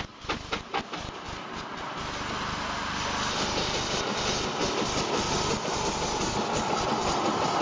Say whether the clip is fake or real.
real